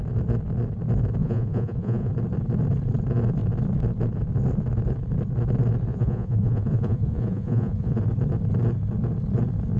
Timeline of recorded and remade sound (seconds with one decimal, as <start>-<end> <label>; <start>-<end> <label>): 0.0-1.2 recorded; 1.2-2.1 remade; 2.1-5.9 recorded; 5.9-8.0 remade; 8.0-9.8 recorded